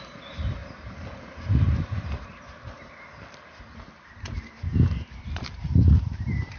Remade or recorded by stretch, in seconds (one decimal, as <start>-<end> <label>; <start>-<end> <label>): 0.0-6.6 remade